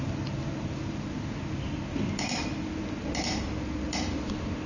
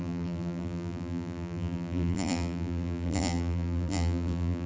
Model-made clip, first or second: second